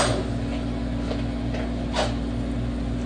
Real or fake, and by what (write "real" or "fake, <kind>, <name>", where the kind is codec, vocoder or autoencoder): real